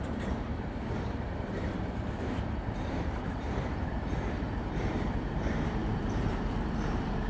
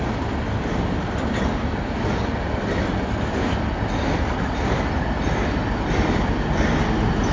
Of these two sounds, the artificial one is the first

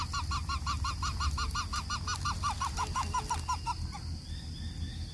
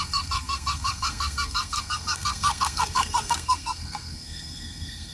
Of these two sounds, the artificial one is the second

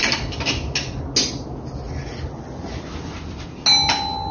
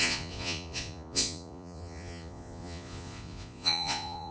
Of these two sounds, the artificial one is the second